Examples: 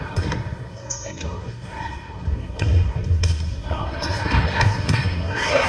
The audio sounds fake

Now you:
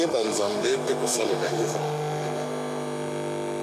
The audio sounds fake